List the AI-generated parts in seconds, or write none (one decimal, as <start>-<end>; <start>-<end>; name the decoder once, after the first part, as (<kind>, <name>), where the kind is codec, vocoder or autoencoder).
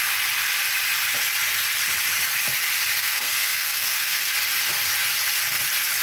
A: 3.0-4.3 (codec, SNAC)